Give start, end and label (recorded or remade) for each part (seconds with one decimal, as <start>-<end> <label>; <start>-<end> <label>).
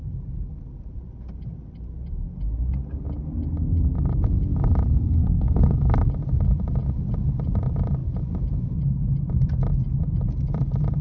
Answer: 0.0-5.0 recorded; 5.0-5.9 remade; 5.9-11.0 recorded